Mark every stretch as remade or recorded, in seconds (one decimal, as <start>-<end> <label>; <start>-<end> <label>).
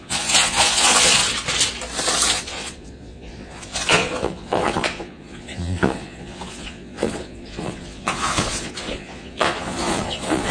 0.0-1.2 remade; 1.2-2.3 recorded; 2.3-10.5 remade